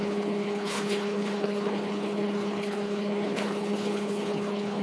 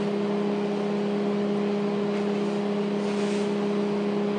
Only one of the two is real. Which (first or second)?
second